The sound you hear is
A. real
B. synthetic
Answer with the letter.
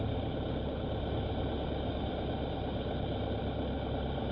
A